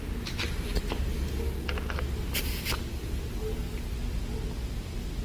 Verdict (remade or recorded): recorded